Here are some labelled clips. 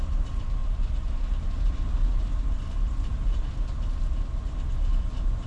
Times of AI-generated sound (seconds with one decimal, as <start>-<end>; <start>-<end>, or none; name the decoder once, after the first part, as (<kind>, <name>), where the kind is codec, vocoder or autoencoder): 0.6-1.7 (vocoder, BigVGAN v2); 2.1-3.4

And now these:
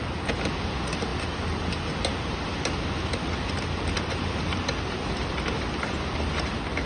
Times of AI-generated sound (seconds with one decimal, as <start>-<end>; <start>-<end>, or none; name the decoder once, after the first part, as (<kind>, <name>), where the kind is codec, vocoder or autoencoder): none

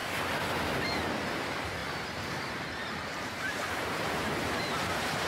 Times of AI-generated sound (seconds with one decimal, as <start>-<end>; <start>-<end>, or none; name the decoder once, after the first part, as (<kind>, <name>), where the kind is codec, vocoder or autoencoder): 1.8-5.3 (vocoder, BigVGAN v2)

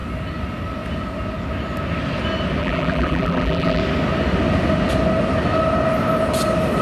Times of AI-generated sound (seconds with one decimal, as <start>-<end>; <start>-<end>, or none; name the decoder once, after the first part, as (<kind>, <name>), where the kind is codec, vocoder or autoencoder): 2.6-3.8 (vocoder, BigVGAN v2)